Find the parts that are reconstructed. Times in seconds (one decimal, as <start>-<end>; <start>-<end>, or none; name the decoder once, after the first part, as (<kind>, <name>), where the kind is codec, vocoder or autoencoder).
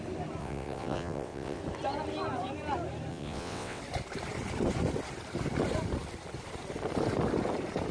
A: 0.4-1.6 (vocoder, WaveNeXt); 3.1-3.8